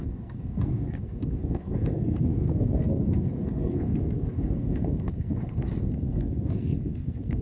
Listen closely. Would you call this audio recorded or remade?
remade